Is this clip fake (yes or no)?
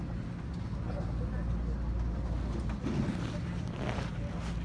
no